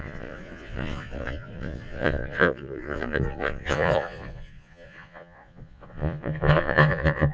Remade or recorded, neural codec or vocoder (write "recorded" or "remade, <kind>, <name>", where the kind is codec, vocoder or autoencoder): remade, vocoder, Vocos